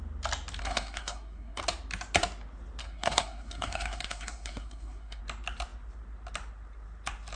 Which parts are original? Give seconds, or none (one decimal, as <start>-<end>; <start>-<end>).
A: 0.0-0.6; 1.6-2.8; 5.2-7.4